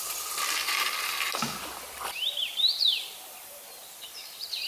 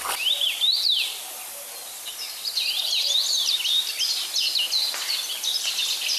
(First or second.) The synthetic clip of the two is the first